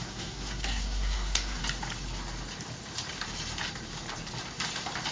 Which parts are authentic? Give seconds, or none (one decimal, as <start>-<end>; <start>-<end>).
1.6-5.1